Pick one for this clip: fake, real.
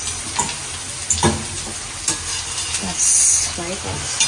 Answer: real